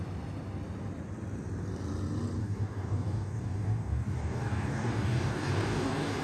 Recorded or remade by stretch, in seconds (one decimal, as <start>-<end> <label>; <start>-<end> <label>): 0.0-2.4 recorded; 2.4-6.2 remade